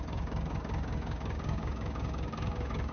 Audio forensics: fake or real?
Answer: fake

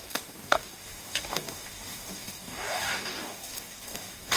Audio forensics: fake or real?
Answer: fake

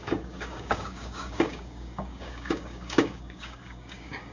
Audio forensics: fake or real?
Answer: fake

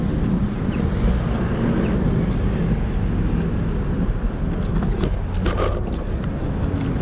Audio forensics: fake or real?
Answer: real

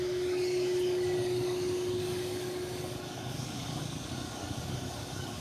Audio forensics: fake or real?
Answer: fake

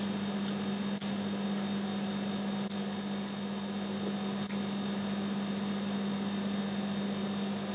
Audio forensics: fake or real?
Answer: real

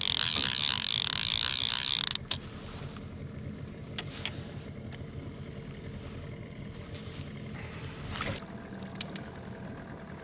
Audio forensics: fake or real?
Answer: real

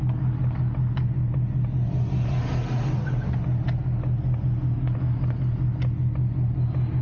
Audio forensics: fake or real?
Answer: real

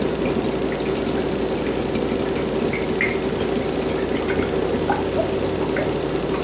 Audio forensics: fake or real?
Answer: real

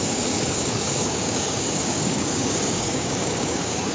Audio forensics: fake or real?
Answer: fake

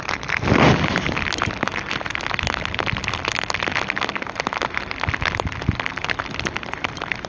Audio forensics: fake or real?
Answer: real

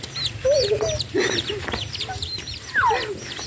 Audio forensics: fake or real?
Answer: real